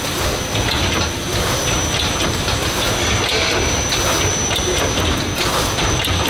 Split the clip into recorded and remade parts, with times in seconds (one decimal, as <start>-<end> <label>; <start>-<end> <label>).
0.0-6.3 recorded